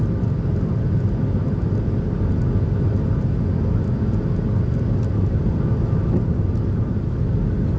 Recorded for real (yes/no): yes